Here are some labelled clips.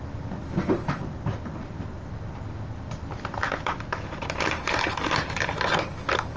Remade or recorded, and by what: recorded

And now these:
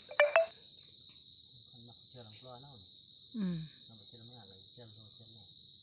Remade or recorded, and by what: recorded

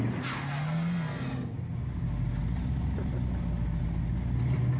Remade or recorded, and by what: recorded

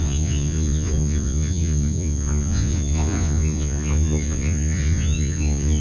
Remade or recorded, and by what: remade, vocoder, Vocos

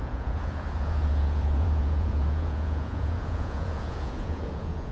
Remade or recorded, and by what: remade, vocoder, Vocos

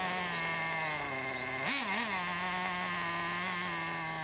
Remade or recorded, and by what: recorded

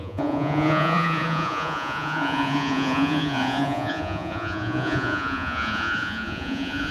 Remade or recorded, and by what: remade, vocoder, Vocos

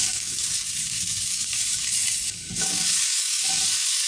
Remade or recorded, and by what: remade, codec, DAC